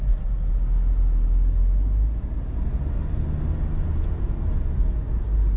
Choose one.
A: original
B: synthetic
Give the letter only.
A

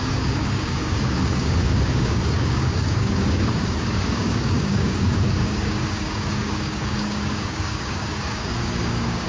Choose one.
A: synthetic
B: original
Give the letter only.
A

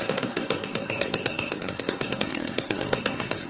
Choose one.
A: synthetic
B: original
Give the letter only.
A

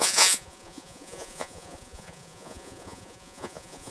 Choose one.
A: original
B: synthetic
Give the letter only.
B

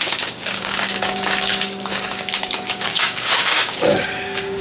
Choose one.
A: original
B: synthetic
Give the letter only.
B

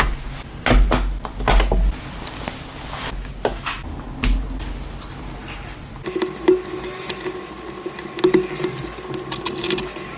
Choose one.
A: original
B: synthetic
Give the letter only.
A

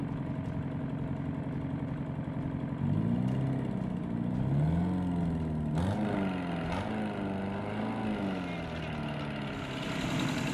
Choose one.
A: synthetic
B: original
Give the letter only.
B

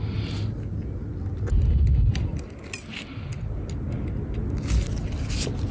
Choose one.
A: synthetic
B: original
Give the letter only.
B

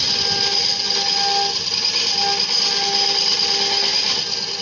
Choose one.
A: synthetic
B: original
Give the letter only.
B